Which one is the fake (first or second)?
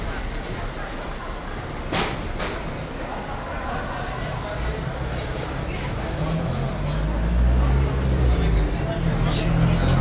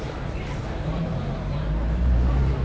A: second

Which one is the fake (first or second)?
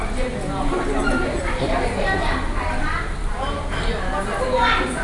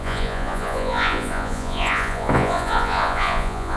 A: second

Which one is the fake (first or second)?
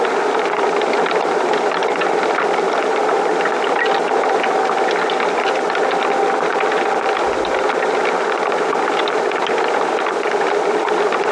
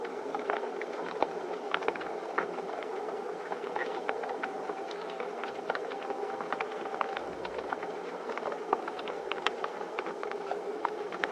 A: second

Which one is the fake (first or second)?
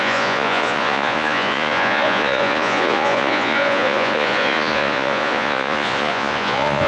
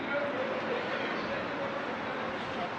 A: first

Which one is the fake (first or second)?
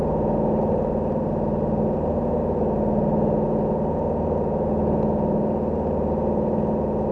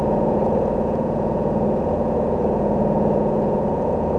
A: second